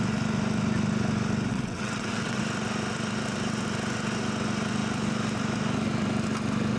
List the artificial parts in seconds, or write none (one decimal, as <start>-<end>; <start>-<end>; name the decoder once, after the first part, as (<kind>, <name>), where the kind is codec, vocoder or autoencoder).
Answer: 1.5-2.4 (vocoder, WaveNeXt)